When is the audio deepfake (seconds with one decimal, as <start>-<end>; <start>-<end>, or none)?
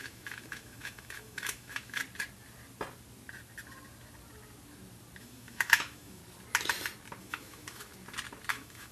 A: 0.0-2.0; 5.2-6.2; 7.2-7.9; 8.5-8.9